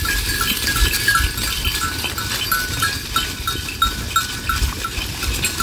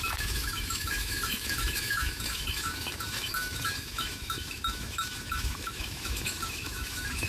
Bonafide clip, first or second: first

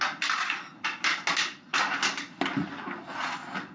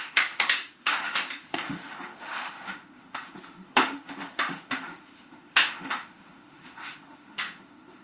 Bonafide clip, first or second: first